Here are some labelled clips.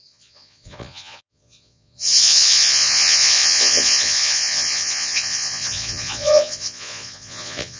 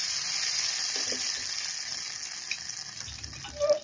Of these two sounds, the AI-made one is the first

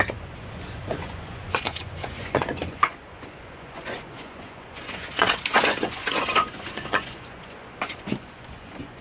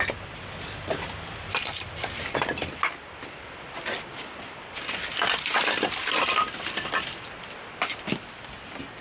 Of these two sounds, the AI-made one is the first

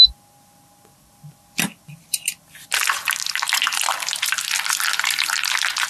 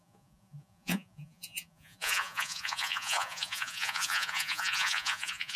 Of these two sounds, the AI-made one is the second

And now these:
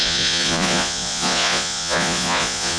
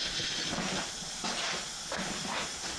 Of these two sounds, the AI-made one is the first